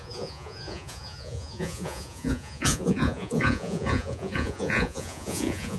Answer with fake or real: fake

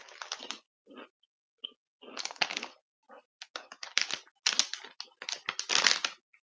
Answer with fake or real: real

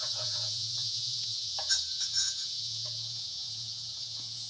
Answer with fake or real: fake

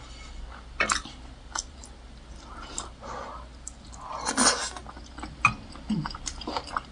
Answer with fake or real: real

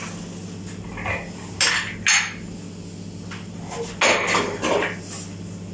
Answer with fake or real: real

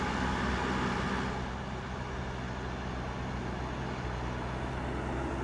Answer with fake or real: real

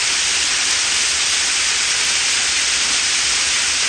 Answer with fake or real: real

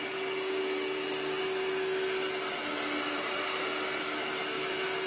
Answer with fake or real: real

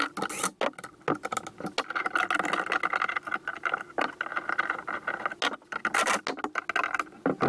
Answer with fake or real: real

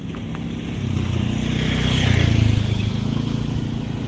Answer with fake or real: real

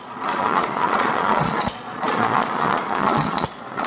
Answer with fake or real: fake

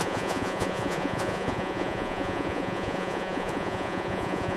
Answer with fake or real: fake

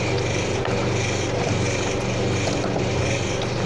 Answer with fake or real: real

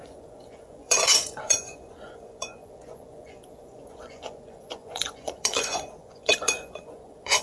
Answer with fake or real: fake